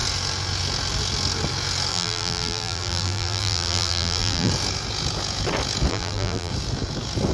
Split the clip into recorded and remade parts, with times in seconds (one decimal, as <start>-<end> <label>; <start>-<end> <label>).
0.0-1.9 recorded; 1.9-4.5 remade; 4.5-5.9 recorded; 5.9-6.5 remade; 6.5-7.3 recorded